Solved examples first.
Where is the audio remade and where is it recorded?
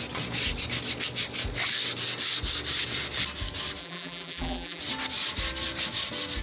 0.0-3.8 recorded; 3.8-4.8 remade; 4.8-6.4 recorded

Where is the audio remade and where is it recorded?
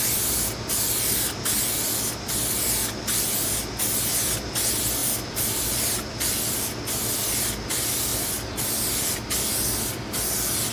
0.0-10.7 recorded